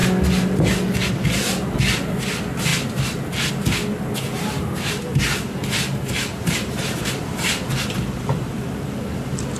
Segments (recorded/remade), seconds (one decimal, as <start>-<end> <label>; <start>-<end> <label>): 0.0-4.3 recorded; 4.3-5.2 remade; 5.2-6.3 recorded; 6.3-7.7 remade; 7.7-9.6 recorded